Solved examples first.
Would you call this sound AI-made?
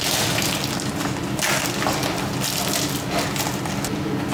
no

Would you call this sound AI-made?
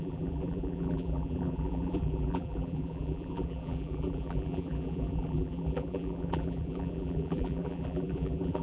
yes